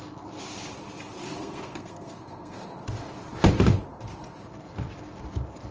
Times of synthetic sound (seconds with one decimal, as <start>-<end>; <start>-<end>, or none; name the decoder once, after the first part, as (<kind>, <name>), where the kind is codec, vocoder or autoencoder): 1.4-2.6 (codec, SNAC)